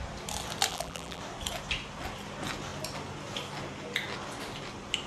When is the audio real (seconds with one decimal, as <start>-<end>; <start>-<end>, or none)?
0.0-0.7; 1.2-5.1